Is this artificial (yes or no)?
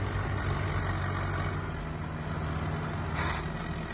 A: no